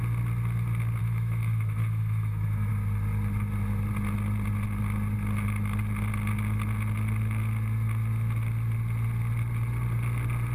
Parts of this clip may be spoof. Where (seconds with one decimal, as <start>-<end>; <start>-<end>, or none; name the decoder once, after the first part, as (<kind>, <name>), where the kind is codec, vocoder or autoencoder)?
1.0-2.7 (autoencoder, DAC-VAE)